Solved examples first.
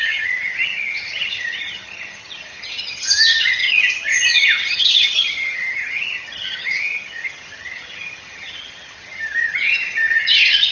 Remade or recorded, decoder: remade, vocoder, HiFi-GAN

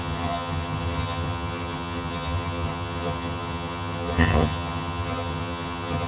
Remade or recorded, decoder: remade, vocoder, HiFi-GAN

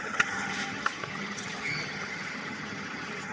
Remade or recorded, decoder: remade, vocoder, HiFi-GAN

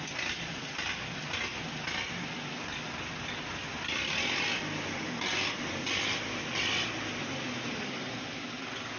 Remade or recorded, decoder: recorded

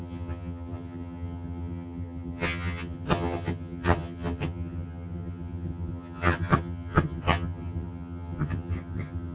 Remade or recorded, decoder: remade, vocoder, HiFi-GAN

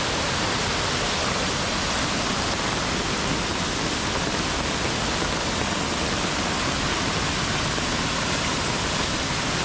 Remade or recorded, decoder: recorded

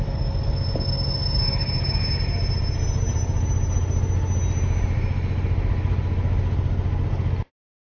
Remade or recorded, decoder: recorded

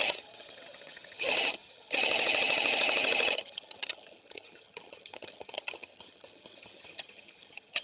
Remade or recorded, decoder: remade, vocoder, HiFi-GAN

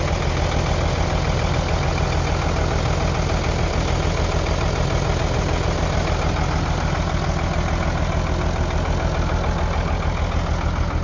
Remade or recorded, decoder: recorded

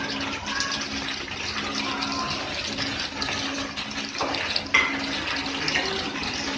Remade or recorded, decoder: recorded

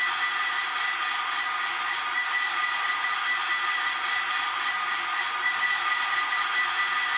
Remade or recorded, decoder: recorded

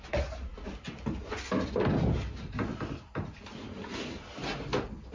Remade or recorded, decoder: recorded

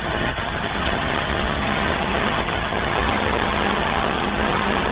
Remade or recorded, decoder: remade, vocoder, HiFi-GAN